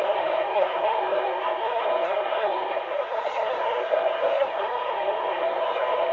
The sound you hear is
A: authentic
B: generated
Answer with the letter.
B